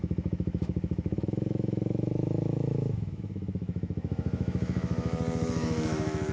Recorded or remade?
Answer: remade